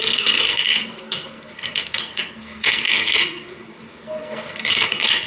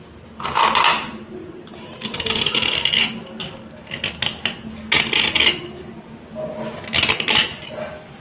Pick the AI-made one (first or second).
first